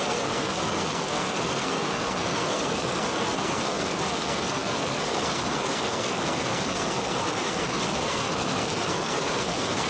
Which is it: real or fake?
fake